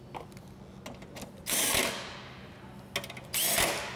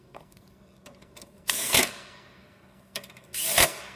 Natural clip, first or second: first